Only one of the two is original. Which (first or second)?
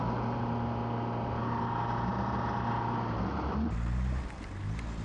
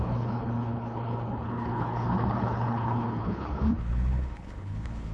first